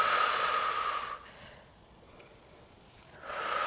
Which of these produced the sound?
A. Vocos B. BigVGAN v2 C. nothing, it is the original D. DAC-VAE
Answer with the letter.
A